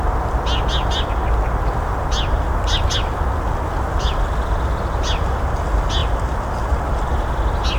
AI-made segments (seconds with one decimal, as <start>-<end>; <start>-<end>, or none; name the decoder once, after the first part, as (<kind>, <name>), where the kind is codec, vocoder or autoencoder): none

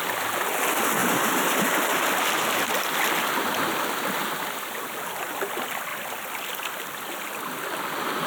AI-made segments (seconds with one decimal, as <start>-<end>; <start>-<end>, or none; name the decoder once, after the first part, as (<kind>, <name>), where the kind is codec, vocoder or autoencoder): none